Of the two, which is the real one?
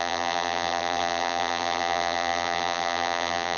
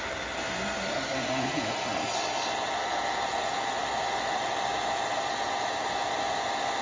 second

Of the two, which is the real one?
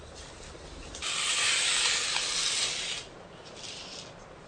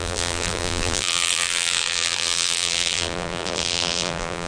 first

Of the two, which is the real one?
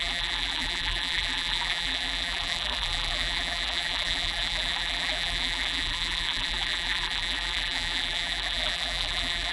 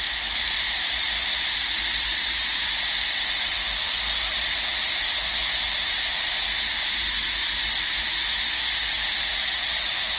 second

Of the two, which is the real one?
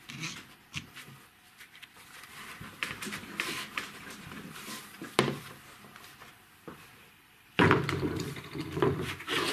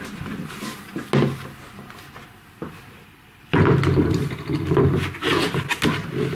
second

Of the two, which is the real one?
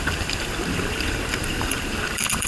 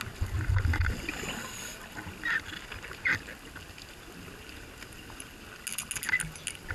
second